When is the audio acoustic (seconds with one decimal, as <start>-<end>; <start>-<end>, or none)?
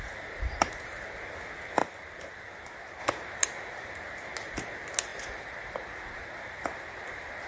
0.0-1.8; 3.0-5.1